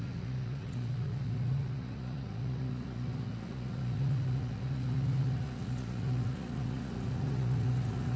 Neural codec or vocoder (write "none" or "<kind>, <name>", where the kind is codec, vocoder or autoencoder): vocoder, Vocos